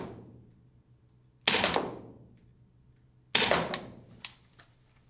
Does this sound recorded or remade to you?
recorded